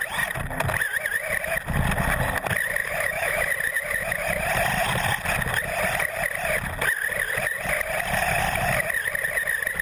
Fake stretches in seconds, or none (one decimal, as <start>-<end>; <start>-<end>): 2.8-3.5